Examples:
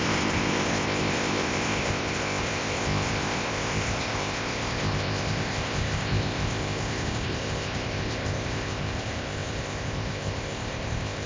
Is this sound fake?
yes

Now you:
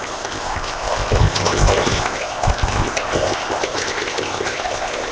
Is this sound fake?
yes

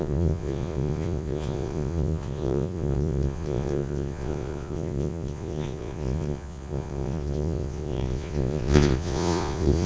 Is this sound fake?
yes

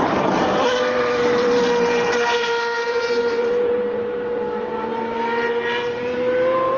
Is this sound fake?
yes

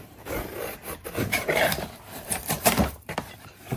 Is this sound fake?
yes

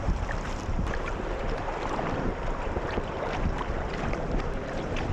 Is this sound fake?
yes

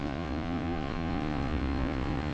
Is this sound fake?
yes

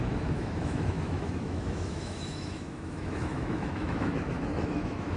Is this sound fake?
yes